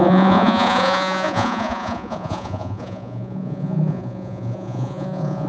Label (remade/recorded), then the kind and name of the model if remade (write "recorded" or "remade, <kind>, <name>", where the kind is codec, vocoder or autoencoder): remade, vocoder, Vocos